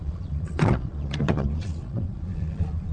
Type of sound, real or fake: fake